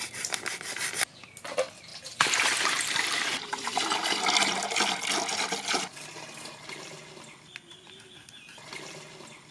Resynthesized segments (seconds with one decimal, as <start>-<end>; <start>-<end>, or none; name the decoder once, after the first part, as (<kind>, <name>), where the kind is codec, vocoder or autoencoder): 1.9-4.2 (vocoder, BigVGAN v2)